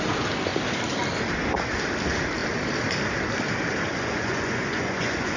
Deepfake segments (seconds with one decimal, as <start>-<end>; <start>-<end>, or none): 3.9-5.4